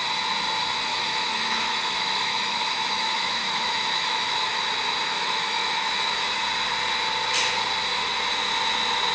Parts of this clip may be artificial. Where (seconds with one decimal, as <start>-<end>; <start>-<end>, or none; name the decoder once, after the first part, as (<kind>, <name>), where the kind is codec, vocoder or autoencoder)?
0.9-4.6 (autoencoder, DAC-VAE); 5.1-6.4